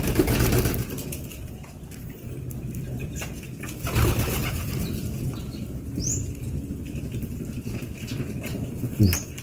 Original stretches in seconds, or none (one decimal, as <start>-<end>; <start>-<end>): 0.0-9.4